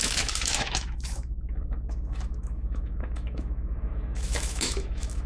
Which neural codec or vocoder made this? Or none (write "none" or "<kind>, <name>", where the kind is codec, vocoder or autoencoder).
autoencoder, DAC-VAE